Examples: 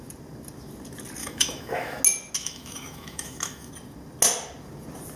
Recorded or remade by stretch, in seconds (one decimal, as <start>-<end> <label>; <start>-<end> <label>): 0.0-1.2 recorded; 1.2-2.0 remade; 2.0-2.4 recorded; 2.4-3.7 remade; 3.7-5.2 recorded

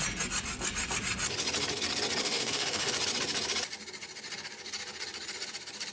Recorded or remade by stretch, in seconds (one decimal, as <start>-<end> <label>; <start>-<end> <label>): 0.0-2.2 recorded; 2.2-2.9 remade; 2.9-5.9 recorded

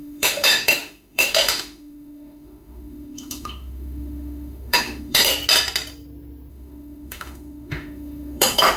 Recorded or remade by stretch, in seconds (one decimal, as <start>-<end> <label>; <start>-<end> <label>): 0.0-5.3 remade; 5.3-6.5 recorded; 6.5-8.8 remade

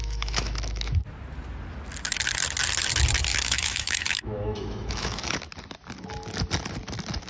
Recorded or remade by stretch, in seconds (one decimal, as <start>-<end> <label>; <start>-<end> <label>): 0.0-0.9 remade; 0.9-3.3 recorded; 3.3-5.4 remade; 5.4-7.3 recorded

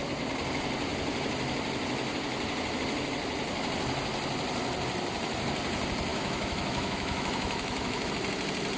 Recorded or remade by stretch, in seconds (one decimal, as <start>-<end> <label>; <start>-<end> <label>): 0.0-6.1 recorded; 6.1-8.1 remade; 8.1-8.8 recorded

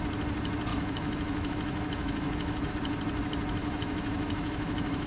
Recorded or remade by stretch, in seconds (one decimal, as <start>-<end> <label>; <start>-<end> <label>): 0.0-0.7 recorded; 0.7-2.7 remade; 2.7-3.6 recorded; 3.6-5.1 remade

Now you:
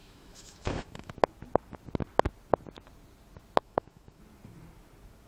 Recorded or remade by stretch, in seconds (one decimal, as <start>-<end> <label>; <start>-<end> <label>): 0.0-1.1 remade; 1.1-3.6 recorded; 3.6-4.2 remade; 4.2-5.3 recorded

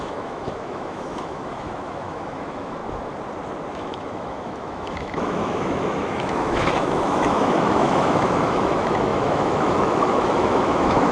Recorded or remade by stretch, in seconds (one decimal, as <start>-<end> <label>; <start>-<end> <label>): 0.0-2.8 remade; 2.8-3.7 recorded; 3.7-11.1 remade